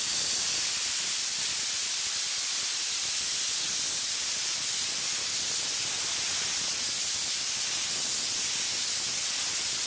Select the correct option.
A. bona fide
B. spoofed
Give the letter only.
A